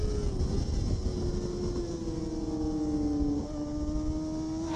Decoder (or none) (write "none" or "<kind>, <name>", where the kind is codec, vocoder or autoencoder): none